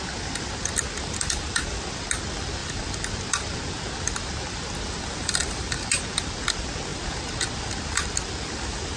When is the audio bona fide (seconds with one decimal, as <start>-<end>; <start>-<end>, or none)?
0.0-9.0